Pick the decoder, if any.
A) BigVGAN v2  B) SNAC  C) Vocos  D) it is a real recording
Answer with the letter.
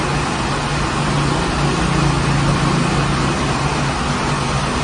D